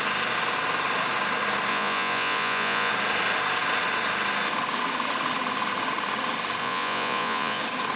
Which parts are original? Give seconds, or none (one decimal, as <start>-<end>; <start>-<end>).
0.0-1.7; 2.9-6.6; 7.6-8.0